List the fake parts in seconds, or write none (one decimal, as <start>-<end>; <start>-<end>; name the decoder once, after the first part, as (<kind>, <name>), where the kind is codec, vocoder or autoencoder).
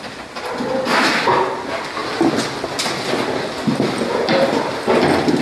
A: none